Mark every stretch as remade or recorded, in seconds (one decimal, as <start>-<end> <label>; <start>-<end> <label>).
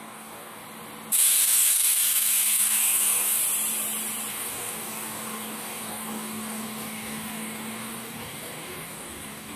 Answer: 0.0-0.6 remade; 0.6-1.1 recorded; 1.1-3.4 remade; 3.4-4.3 recorded; 4.3-9.6 remade